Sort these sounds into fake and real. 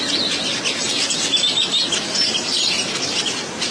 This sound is real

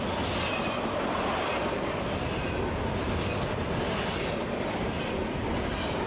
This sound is real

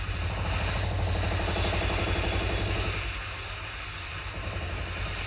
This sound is real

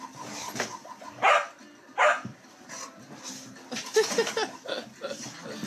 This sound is real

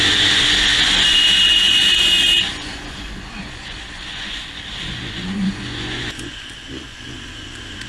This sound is fake